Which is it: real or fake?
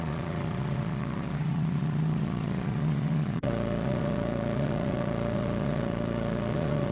fake